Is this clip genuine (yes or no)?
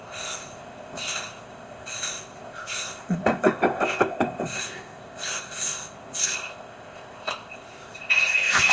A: no